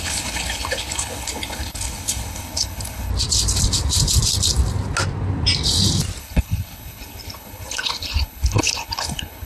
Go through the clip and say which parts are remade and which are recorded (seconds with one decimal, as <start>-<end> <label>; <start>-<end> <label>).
0.0-3.1 remade; 3.1-6.2 recorded; 6.2-9.5 remade